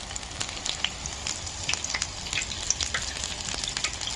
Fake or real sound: real